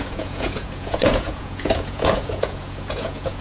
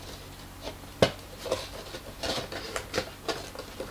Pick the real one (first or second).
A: second